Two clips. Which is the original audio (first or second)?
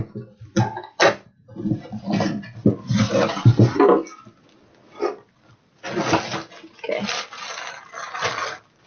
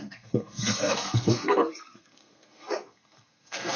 first